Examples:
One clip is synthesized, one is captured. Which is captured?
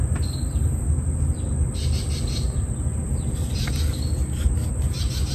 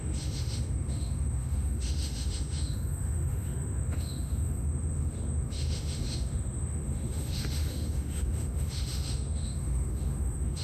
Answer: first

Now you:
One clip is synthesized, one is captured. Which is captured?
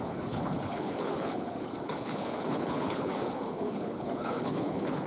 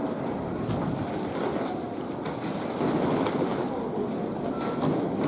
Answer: second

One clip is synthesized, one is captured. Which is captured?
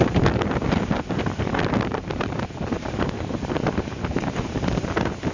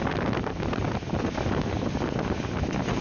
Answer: second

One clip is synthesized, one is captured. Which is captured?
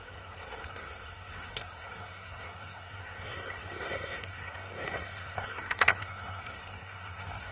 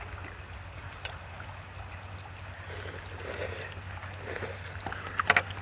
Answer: second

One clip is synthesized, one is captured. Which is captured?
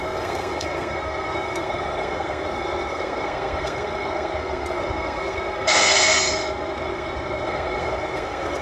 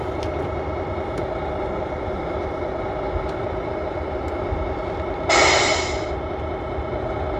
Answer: second